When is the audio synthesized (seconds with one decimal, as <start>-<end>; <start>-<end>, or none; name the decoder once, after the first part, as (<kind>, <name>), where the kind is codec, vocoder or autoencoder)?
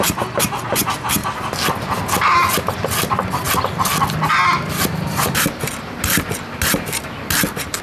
none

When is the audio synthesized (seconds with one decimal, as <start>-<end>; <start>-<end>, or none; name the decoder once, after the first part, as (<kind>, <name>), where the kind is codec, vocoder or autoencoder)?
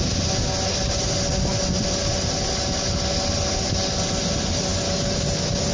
none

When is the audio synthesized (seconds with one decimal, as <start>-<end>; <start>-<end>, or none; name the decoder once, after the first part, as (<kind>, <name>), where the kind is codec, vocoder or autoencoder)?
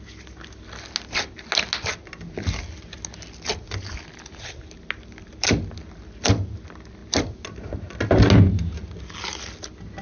none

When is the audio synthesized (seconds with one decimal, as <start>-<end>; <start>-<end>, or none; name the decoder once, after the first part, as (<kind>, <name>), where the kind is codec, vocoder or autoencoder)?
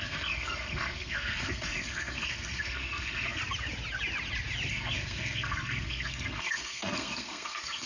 0.0-3.4 (codec, SNAC); 4.7-7.9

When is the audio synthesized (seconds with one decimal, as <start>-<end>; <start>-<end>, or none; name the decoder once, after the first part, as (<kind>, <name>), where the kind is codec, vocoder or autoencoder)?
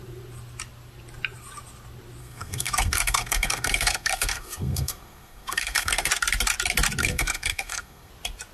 2.2-6.1 (codec, SNAC); 7.0-8.1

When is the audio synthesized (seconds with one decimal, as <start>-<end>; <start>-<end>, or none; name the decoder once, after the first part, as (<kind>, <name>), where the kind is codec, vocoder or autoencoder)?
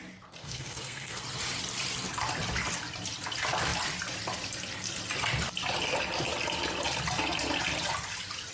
0.4-1.2 (codec, SNAC)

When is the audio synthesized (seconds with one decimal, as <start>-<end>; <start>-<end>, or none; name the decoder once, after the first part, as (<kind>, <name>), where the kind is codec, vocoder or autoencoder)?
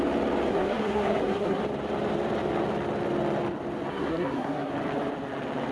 0.5-1.6 (codec, SNAC); 3.9-4.7